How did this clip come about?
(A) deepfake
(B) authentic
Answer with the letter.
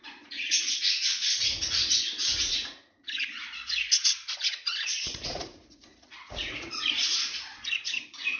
A